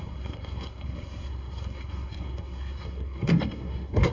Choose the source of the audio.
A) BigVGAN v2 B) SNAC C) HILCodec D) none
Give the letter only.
B